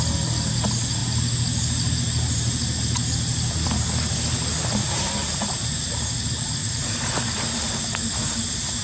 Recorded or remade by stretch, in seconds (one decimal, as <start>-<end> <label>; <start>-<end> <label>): 0.0-6.6 recorded; 6.6-7.5 remade; 7.5-8.8 recorded